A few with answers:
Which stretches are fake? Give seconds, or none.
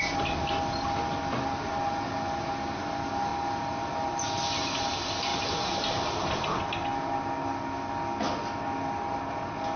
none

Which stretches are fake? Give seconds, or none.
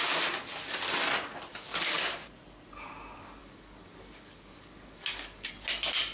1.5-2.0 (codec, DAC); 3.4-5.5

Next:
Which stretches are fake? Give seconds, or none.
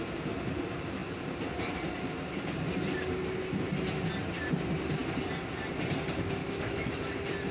6.4-7.0 (autoencoder, DAC-VAE)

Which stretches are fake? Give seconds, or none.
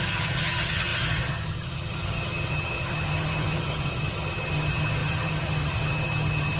0.0-6.6 (vocoder, HiFi-GAN)